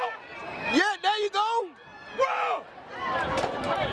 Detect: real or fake real